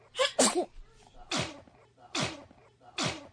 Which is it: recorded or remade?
recorded